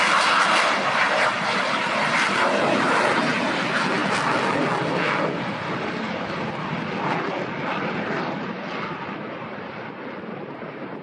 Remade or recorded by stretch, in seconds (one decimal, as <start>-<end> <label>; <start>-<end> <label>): 0.0-11.0 recorded